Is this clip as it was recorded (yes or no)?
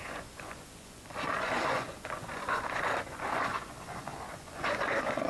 no